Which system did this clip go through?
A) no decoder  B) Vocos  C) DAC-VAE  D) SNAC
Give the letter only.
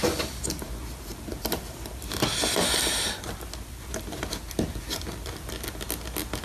A